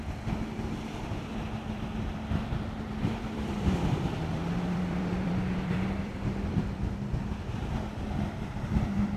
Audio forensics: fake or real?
fake